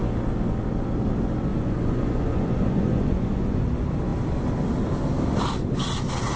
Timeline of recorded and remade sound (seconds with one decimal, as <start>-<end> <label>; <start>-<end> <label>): 0.0-1.5 recorded; 1.5-3.6 remade; 3.6-6.4 recorded